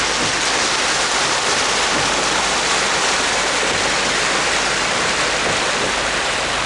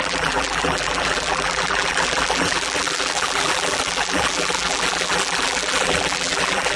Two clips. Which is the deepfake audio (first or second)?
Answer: second